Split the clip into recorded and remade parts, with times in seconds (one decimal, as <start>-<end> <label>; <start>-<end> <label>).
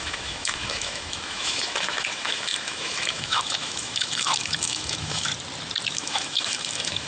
0.0-5.3 remade; 5.3-5.9 recorded; 5.9-7.1 remade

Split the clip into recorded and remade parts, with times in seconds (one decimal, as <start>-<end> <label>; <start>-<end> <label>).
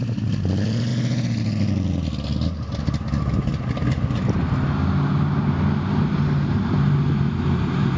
0.0-8.0 recorded